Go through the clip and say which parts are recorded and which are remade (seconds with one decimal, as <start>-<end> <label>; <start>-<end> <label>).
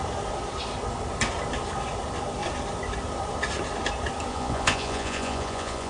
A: 0.0-4.3 recorded; 4.3-5.9 remade